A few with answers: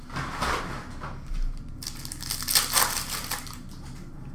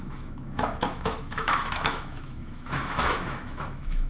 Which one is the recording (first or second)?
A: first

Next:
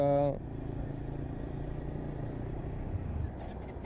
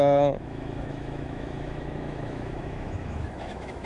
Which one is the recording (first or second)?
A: first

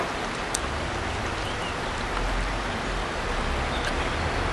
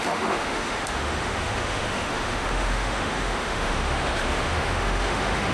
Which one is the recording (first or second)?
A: first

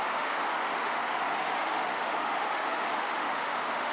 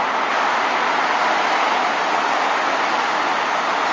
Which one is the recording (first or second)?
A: second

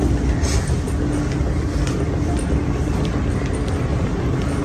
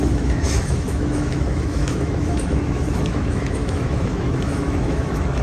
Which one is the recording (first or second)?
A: first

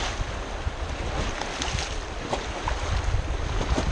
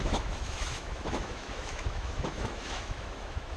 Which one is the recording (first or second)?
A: first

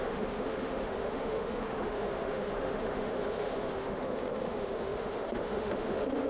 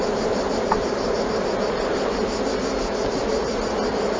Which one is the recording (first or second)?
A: second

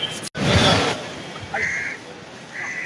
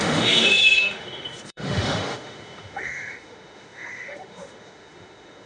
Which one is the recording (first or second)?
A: first